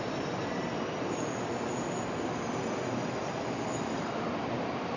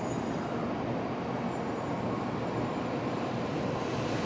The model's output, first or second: first